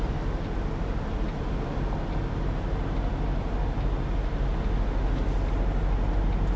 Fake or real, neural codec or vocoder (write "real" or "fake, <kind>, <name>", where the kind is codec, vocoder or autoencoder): real